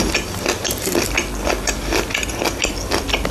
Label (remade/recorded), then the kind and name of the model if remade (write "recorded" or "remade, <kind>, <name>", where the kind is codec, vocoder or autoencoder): recorded